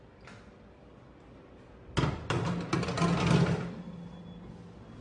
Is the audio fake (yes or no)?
no